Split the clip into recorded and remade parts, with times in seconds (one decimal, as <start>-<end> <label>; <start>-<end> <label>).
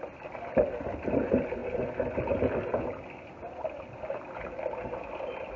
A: 0.0-5.6 recorded